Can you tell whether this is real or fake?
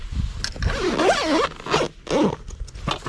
real